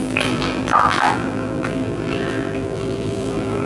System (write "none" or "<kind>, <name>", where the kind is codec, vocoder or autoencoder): vocoder, BigVGAN v2